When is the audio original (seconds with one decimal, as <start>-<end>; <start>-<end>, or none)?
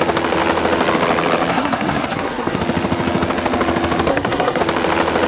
0.0-1.5; 2.6-4.1; 4.6-5.3